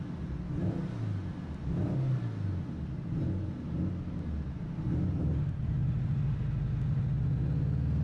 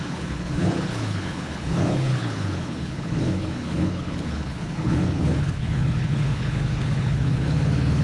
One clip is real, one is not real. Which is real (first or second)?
first